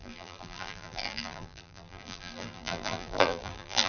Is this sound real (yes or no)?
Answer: no